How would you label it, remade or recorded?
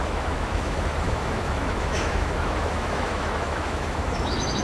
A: remade